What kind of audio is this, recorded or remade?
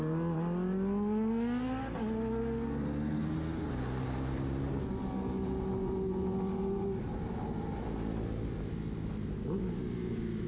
recorded